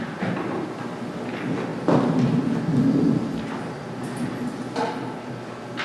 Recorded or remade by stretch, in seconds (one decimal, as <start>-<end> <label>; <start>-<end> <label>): 0.0-5.8 recorded